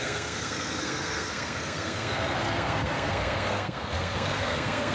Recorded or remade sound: remade